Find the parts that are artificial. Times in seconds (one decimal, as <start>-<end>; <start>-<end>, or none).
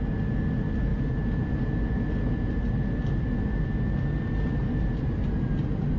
none